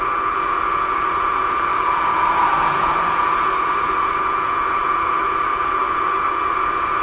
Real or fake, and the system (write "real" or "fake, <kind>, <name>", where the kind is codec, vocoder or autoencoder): fake, vocoder, Vocos